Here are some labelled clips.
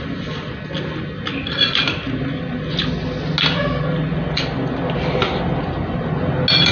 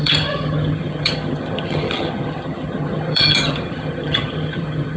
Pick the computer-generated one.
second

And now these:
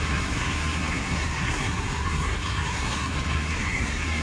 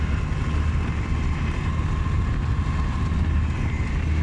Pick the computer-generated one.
first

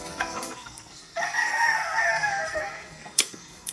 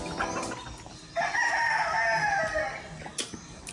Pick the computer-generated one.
first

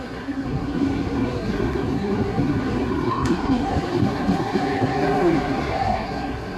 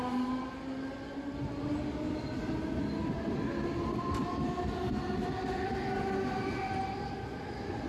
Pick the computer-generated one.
first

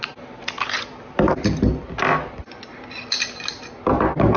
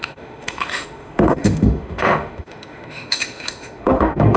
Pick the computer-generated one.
second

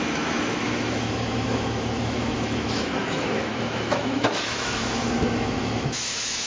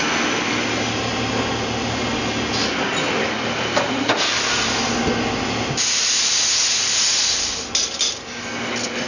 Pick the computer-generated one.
first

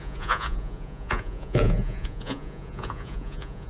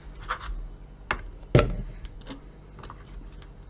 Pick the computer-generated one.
first